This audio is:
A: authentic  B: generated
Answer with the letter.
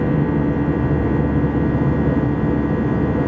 A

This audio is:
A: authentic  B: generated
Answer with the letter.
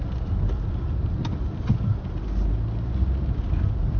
A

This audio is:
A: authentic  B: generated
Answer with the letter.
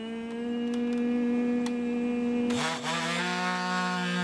A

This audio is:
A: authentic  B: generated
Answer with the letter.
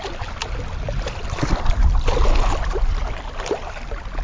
A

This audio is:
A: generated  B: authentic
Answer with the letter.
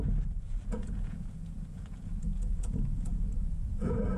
A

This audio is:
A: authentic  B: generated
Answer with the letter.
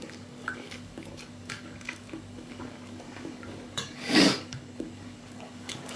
B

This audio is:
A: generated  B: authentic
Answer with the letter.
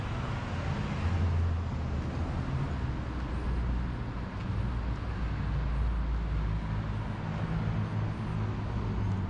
B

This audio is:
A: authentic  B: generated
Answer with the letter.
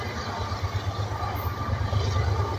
A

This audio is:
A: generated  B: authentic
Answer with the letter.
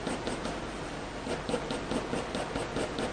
B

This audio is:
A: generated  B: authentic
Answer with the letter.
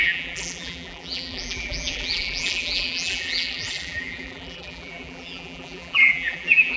A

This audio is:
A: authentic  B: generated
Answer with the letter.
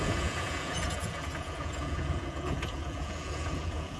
B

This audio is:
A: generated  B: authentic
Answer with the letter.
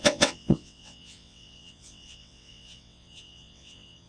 A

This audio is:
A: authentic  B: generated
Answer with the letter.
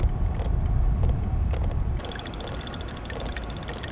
A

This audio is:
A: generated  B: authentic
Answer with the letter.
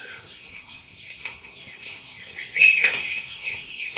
A